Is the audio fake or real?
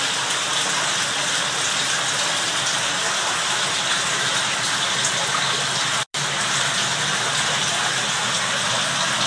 real